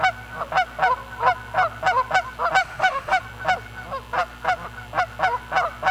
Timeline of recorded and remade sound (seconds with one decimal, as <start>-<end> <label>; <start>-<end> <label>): 0.0-2.6 recorded; 2.6-3.2 remade; 3.2-5.9 recorded

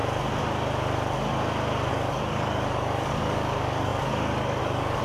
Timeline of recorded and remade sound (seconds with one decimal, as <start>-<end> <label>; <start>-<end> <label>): 0.0-1.9 recorded; 1.9-5.0 remade

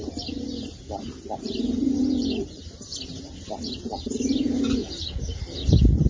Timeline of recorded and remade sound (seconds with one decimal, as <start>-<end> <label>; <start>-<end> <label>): 0.0-6.1 recorded

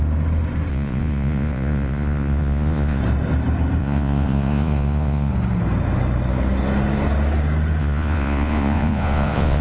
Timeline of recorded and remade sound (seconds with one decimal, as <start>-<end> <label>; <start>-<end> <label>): 0.0-0.7 recorded; 0.7-3.0 remade; 3.0-3.8 recorded; 3.8-5.3 remade; 5.3-7.8 recorded; 7.8-9.6 remade

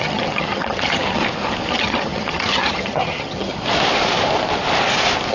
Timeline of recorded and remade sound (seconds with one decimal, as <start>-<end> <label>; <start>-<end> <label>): 0.0-1.2 remade; 1.2-1.7 recorded; 1.7-3.5 remade; 3.5-5.3 recorded

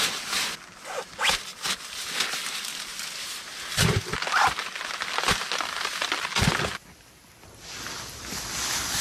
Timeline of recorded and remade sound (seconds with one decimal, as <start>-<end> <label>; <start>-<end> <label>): 0.0-9.0 recorded

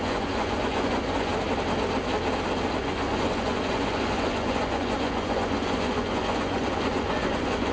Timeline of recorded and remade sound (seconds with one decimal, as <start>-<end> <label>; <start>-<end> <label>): 0.0-1.3 remade; 1.3-2.8 recorded; 2.8-7.7 remade